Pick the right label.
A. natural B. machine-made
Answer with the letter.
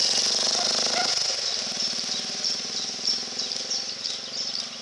A